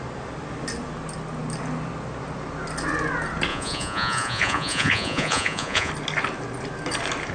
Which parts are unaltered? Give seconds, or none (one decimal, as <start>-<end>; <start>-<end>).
0.0-3.5; 5.9-7.3